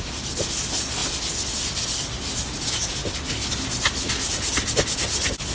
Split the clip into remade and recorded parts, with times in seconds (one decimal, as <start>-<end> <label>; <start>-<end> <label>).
0.0-5.5 recorded